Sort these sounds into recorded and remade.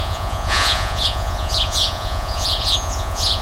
remade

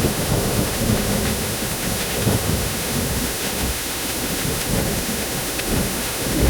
remade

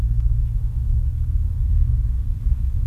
remade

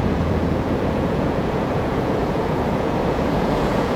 remade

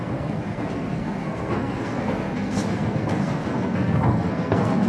remade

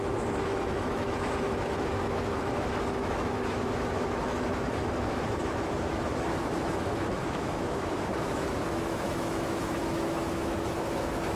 remade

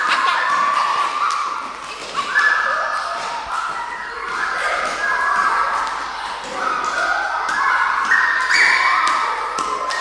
recorded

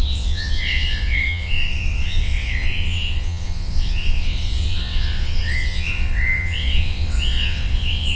remade